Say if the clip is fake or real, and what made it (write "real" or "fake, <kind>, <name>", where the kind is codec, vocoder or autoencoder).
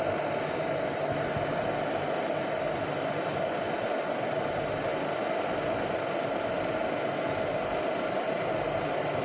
real